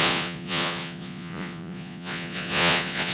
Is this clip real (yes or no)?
no